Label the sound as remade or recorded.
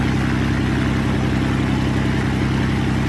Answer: recorded